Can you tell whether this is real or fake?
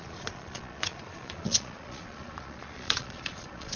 fake